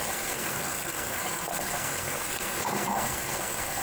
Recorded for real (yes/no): no